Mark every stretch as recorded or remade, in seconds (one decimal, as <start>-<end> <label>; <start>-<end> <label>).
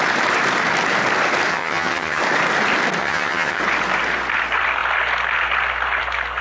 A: 0.0-1.5 recorded; 1.5-2.2 remade; 2.2-3.0 recorded; 3.0-3.6 remade; 3.6-6.4 recorded